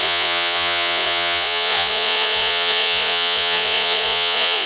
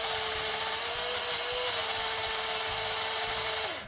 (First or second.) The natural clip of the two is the second